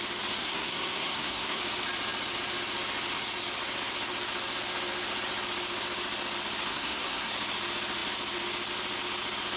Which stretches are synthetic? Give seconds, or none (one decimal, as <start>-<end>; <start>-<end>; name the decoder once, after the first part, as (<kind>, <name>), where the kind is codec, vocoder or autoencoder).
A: 0.4-1.6 (codec, SNAC); 6.7-7.3